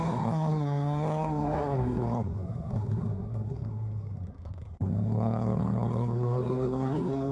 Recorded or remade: remade